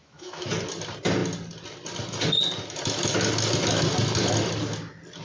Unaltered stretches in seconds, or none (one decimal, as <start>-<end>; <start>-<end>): 0.5-5.2